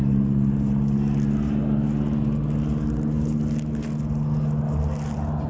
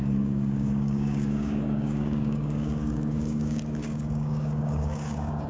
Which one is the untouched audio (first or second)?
first